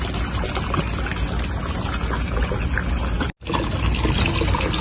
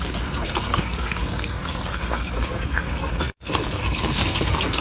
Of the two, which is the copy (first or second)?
second